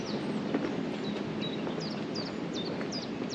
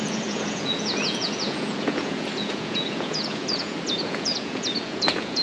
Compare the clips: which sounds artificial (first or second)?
second